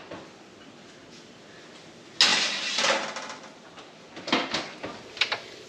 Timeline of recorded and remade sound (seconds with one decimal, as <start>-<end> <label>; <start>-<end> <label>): 0.0-5.7 recorded